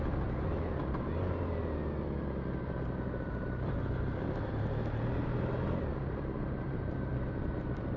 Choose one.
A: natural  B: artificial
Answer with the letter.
A